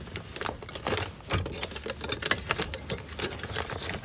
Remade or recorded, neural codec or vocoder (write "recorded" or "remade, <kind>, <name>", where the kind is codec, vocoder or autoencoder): recorded